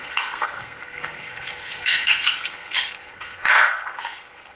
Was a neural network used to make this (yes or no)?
yes